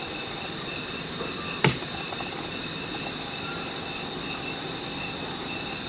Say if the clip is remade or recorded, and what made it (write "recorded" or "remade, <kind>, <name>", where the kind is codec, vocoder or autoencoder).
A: recorded